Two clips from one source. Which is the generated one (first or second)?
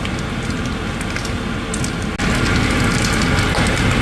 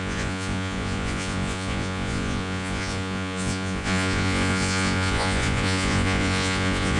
second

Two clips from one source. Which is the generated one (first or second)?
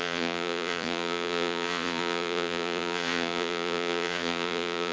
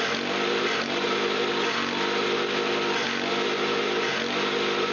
first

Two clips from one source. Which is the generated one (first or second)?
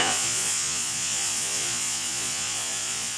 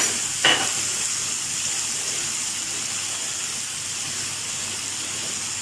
first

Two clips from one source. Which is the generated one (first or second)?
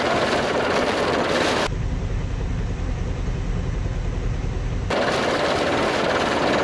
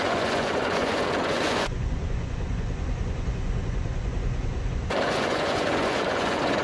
second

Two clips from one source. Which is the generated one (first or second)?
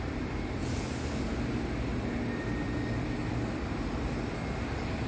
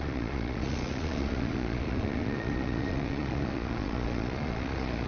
second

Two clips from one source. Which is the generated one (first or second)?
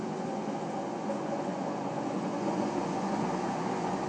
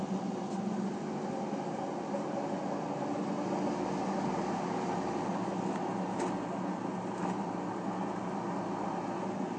first